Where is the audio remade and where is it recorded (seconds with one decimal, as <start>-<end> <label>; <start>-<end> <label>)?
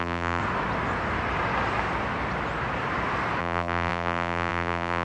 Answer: 0.0-0.4 remade; 0.4-3.4 recorded; 3.4-5.0 remade